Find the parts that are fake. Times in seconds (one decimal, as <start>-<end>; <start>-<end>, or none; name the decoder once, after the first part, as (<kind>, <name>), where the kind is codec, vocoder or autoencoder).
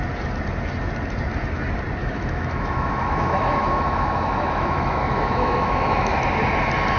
2.0-6.2 (autoencoder, DAC-VAE)